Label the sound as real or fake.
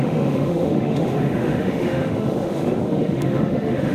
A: fake